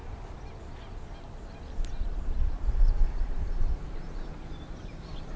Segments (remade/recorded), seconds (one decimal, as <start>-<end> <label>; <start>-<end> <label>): 0.0-2.1 recorded; 2.1-5.4 remade